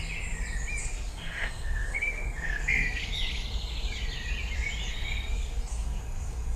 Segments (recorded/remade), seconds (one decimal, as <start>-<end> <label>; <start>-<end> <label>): 0.0-0.8 recorded; 0.8-3.0 remade; 3.0-4.9 recorded; 4.9-6.6 remade

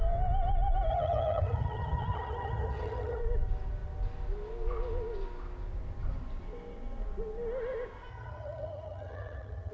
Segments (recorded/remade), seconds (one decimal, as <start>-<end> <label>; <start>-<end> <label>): 0.0-0.9 recorded; 0.9-3.2 remade; 3.2-8.1 recorded; 8.1-9.7 remade

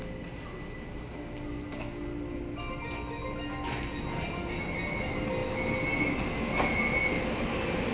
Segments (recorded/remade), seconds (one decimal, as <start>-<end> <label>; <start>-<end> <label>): 0.0-7.9 recorded

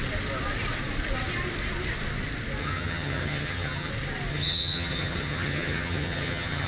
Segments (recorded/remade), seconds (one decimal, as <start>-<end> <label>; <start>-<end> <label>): 0.0-2.6 recorded; 2.6-3.9 remade; 3.9-4.3 recorded; 4.3-6.7 remade

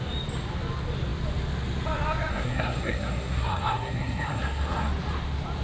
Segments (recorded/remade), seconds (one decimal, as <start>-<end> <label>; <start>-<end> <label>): 0.0-2.3 recorded; 2.3-4.9 remade; 4.9-5.6 recorded